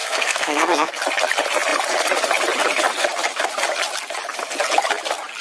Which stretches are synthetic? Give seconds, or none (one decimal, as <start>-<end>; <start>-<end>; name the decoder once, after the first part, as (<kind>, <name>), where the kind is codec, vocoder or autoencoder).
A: 0.0-0.9 (codec, SNAC)